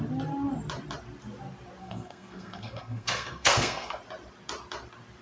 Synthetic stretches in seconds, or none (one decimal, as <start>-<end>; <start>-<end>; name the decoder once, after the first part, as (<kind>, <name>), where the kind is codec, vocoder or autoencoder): 1.8-4.0 (codec, SNAC)